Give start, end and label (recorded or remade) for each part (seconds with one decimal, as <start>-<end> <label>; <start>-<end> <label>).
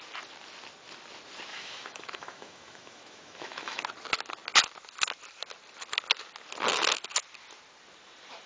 0.0-1.5 recorded; 1.5-3.8 remade; 3.8-8.5 recorded